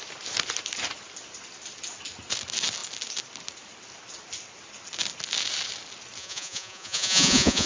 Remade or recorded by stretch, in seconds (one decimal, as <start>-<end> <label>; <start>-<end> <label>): 0.0-6.2 recorded; 6.2-7.7 remade